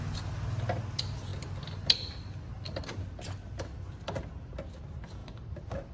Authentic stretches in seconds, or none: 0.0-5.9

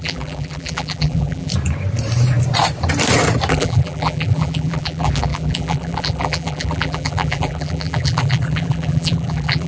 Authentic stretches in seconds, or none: 1.5-3.5